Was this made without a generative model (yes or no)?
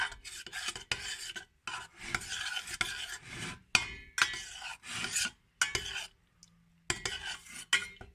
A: yes